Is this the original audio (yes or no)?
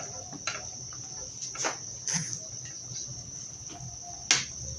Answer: yes